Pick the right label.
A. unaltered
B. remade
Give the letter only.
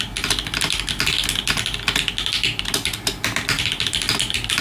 A